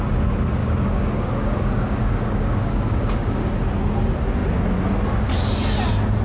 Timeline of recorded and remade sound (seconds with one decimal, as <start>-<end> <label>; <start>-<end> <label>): 0.0-0.6 recorded; 0.6-3.5 remade; 3.5-6.2 recorded